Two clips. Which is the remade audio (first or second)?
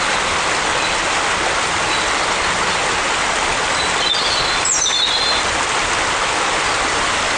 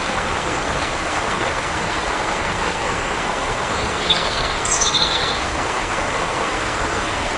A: second